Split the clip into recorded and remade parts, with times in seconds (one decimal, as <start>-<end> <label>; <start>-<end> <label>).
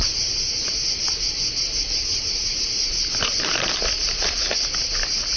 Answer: 0.0-5.4 recorded